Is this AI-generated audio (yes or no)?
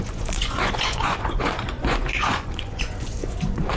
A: yes